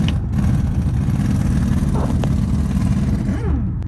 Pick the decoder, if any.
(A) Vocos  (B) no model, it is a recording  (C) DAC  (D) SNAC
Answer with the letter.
B